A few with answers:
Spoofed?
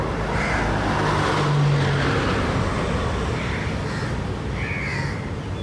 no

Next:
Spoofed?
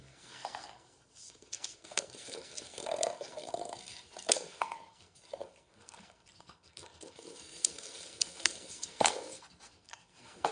yes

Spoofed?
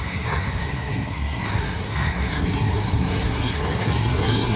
yes